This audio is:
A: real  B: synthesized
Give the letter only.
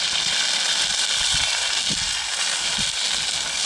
A